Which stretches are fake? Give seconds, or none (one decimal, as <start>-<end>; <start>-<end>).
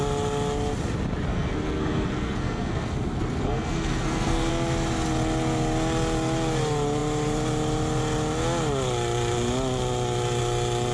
1.3-4.5